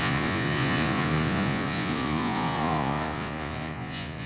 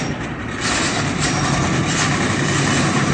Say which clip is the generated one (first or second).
first